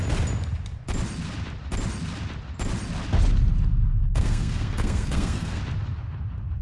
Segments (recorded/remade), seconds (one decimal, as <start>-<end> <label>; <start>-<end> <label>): 0.0-3.7 recorded; 3.7-5.6 remade; 5.6-6.6 recorded